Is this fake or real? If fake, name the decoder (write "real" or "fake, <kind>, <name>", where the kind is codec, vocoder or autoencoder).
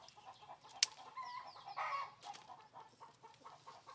real